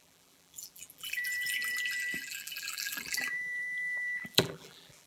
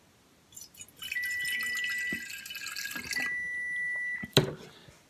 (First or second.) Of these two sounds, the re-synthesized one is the first